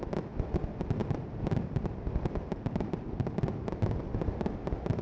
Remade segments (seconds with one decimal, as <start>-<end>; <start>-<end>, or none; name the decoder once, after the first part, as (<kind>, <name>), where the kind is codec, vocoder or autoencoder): none